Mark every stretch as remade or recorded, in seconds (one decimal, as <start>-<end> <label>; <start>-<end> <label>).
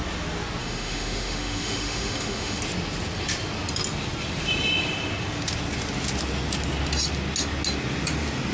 0.0-0.6 recorded; 0.6-2.6 remade; 2.6-8.5 recorded